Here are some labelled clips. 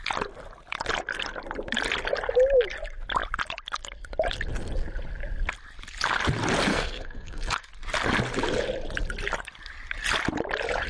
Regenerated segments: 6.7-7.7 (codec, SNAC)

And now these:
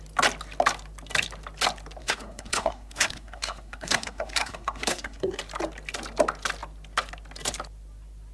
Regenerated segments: 2.0-5.4 (codec, SNAC)

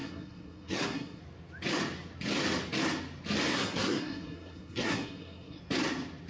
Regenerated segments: 0.0-1.2 (codec, SNAC); 3.5-5.6

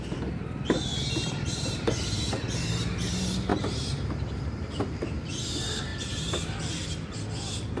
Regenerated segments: 0.9-1.9 (vocoder, BigVGAN v2); 3.5-4.9

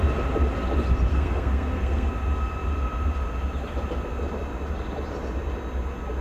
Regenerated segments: 1.1-2.1 (codec, SNAC)

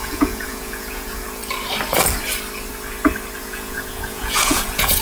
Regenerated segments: 0.0-1.4 (vocoder, Vocos); 3.4-5.0

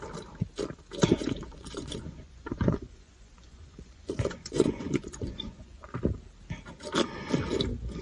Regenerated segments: 1.1-5.9 (vocoder, Vocos)

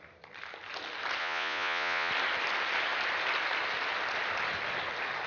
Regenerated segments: 1.2-2.1 (vocoder, Vocos)